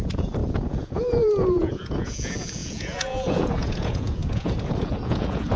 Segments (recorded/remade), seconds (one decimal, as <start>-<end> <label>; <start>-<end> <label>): 0.0-5.6 remade